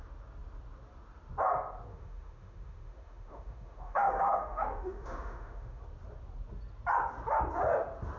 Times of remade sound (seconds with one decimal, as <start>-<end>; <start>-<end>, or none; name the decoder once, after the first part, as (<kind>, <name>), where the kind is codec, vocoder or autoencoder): 1.9-5.8 (autoencoder, DAC-VAE)